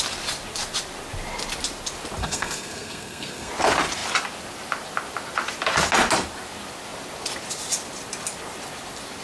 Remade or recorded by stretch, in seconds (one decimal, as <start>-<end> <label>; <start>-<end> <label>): 0.0-2.2 recorded; 2.2-3.5 remade; 3.5-9.2 recorded

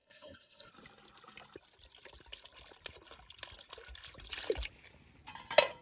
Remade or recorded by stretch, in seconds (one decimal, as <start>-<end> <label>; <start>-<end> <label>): 0.0-0.7 remade; 0.7-5.8 recorded

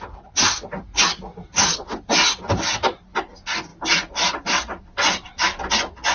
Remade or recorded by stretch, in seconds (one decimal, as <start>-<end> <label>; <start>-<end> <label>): 0.0-1.3 recorded; 1.3-2.7 remade; 2.7-3.7 recorded; 3.7-5.6 remade; 5.6-6.1 recorded

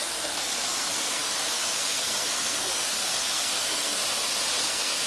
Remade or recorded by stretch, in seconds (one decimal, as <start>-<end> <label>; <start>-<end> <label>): 0.0-4.0 remade; 4.0-4.6 recorded; 4.6-5.1 remade

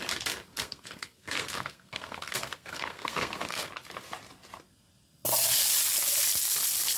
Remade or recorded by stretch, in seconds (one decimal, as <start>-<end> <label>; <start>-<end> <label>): 0.0-0.5 recorded; 0.5-3.7 remade; 3.7-7.0 recorded

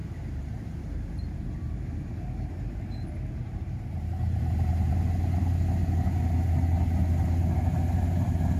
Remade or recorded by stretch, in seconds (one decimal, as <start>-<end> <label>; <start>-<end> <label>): 0.0-4.9 remade; 4.9-8.6 recorded